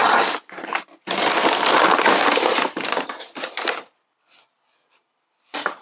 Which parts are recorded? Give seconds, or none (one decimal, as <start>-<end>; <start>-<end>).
0.0-5.8